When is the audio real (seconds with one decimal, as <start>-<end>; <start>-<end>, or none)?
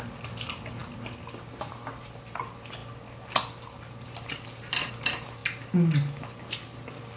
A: 0.0-7.2